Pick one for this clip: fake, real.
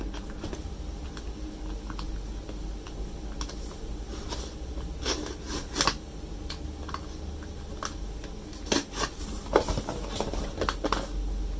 real